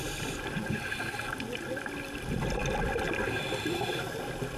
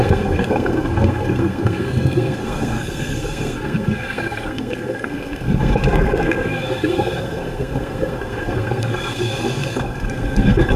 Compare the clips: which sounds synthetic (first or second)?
second